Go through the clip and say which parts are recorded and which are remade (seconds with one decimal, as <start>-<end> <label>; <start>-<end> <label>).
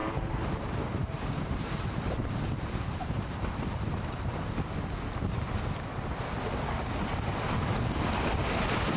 0.0-4.4 remade; 4.4-9.0 recorded